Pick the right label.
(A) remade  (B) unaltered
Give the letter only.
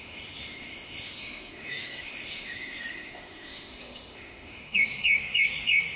A